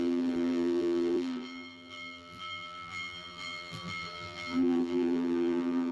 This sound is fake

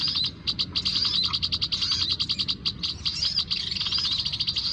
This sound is real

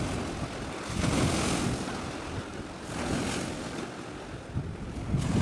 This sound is real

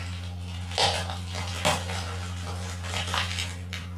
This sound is real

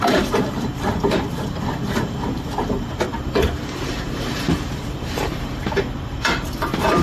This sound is fake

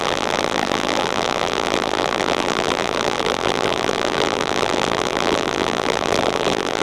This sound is fake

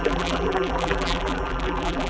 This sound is fake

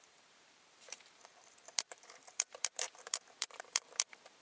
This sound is fake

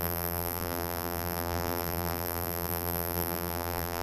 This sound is fake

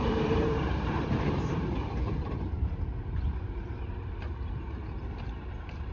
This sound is fake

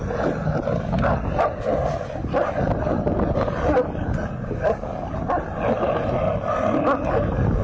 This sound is real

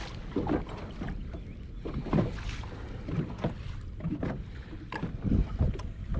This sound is real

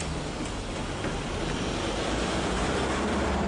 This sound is fake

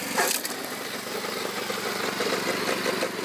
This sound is real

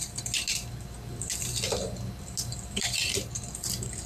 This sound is real